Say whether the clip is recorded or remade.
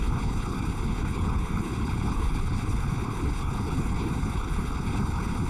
remade